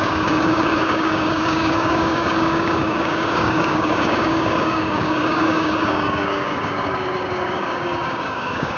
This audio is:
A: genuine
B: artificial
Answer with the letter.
B